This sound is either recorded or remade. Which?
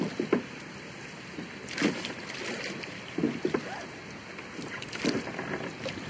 remade